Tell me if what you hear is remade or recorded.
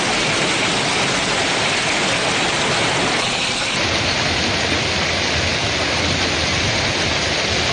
recorded